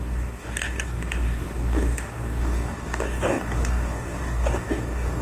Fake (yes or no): yes